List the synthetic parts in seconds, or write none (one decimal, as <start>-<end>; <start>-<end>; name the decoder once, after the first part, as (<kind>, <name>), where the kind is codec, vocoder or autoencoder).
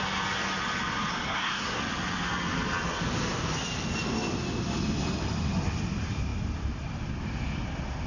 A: 1.1-1.8 (codec, SNAC)